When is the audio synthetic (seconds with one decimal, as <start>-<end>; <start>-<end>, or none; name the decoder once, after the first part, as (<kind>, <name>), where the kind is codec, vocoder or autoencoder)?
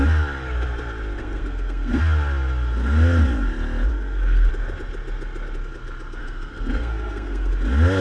1.2-2.0 (codec, SNAC); 3.9-4.5; 6.2-7.5